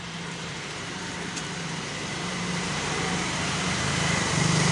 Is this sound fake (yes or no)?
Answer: yes